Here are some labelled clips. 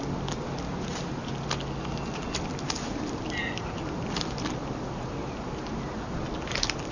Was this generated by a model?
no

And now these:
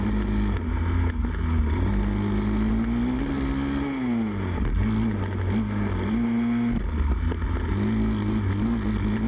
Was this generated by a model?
no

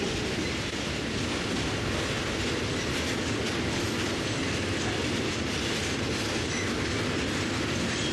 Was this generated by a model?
no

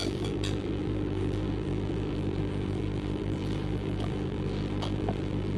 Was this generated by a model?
yes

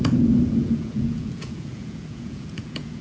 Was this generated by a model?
yes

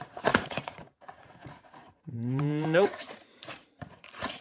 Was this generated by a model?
yes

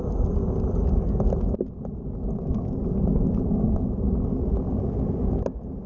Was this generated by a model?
no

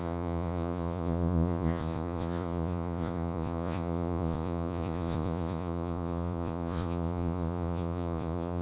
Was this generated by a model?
yes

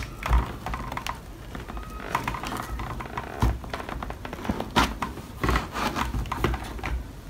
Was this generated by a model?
no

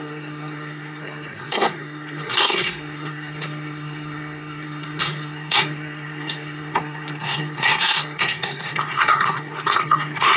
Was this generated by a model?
yes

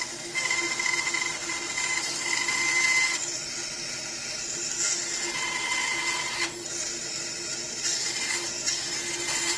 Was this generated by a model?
no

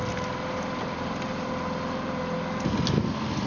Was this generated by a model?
no